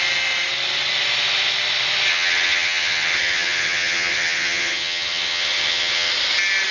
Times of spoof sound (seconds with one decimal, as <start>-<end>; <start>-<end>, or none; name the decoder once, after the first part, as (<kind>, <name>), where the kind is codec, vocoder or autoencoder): 2.1-6.1 (vocoder, HiFi-GAN)